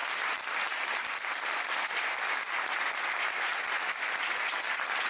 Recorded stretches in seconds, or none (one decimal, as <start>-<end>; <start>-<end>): 0.0-5.1